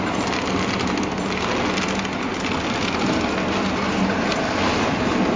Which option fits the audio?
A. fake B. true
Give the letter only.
B